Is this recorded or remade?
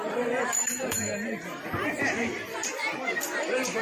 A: remade